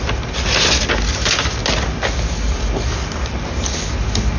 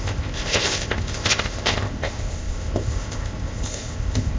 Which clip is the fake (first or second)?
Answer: second